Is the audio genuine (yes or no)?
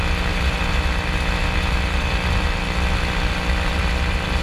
yes